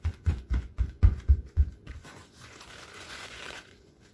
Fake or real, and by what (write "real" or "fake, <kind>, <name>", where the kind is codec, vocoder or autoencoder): fake, vocoder, Vocos